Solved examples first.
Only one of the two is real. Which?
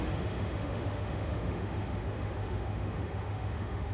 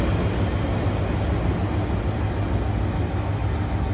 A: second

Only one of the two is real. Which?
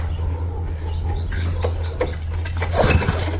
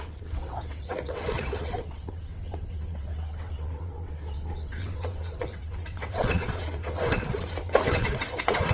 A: first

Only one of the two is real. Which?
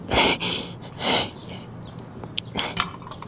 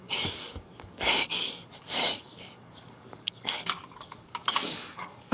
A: first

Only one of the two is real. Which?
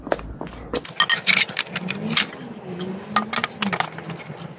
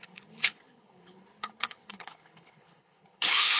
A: first